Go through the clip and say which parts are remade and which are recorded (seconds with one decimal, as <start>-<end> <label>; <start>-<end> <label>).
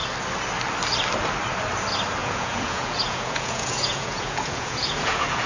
0.0-2.2 recorded; 2.2-5.5 remade